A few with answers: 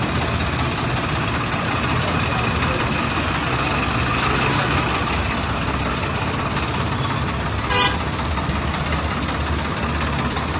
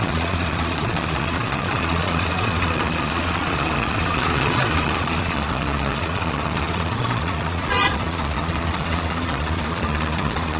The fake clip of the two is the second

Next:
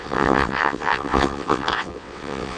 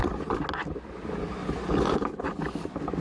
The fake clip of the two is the first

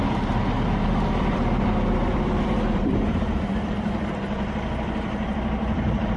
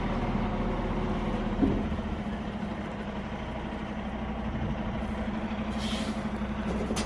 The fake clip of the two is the first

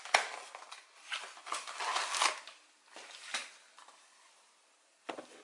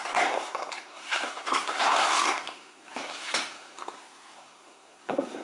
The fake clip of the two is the second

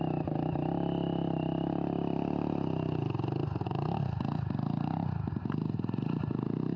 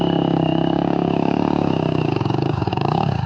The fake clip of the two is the second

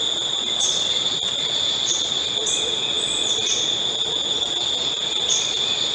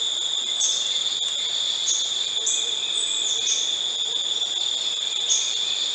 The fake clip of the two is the first